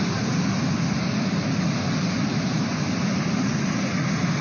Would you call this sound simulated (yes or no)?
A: no